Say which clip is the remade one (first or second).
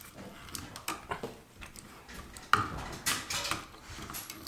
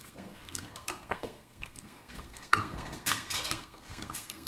second